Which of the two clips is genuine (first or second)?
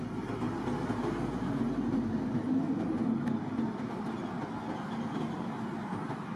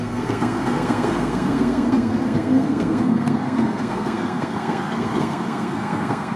first